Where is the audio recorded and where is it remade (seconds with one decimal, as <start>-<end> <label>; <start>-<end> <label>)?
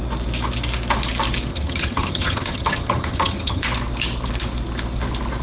0.0-1.5 recorded; 1.5-3.6 remade; 3.6-5.4 recorded